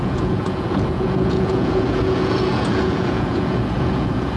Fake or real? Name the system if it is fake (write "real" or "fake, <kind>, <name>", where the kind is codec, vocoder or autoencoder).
fake, vocoder, Vocos